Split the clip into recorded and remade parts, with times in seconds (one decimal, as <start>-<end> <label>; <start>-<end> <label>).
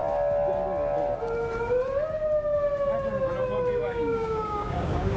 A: 0.0-3.8 recorded; 3.8-5.2 remade